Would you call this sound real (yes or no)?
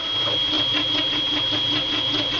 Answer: yes